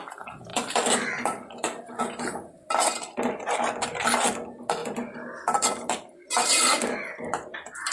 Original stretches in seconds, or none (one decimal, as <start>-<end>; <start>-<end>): 0.0-7.9